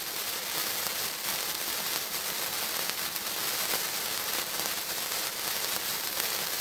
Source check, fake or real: real